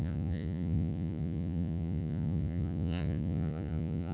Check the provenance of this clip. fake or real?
fake